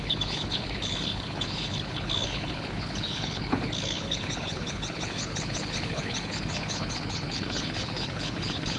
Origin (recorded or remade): remade